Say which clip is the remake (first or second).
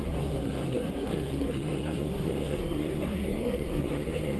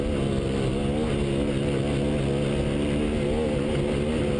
first